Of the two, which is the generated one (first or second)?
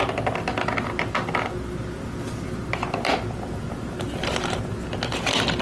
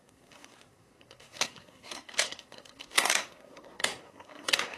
second